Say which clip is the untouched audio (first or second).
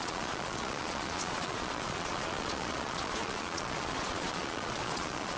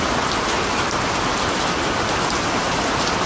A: second